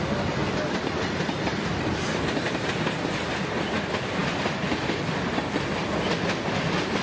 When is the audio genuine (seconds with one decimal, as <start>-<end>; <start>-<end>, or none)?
0.0-0.4; 2.6-4.2; 5.9-7.0